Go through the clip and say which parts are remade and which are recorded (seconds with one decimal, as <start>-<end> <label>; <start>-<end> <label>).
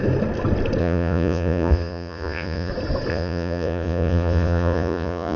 0.0-0.8 recorded; 0.8-2.7 remade; 2.7-3.1 recorded; 3.1-5.4 remade